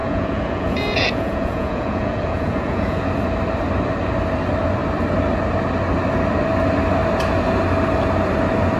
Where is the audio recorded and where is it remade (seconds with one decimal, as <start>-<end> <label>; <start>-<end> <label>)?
0.0-3.1 remade; 3.1-8.8 recorded